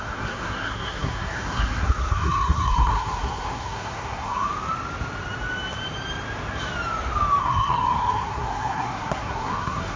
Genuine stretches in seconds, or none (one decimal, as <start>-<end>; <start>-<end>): 4.5-7.4